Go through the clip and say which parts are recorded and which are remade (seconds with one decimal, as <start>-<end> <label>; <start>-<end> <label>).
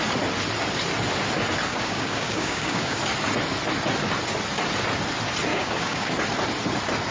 0.0-1.7 recorded; 1.7-3.0 remade; 3.0-5.5 recorded; 5.5-6.1 remade; 6.1-7.1 recorded